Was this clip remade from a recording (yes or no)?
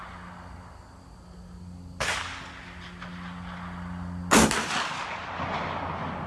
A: no